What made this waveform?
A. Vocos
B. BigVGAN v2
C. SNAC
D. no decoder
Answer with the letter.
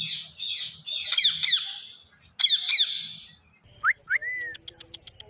D